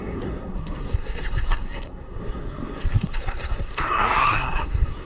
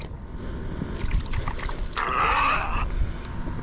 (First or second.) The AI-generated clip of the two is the first